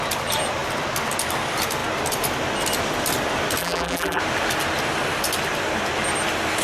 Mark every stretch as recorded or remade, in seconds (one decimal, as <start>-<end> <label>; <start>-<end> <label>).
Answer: 0.0-3.6 recorded; 3.6-4.2 remade; 4.2-6.6 recorded